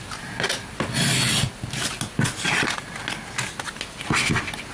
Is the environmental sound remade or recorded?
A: recorded